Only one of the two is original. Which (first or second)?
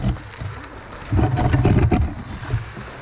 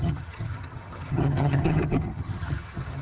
first